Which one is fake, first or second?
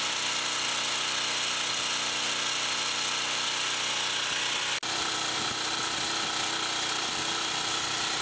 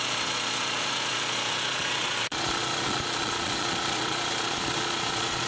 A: second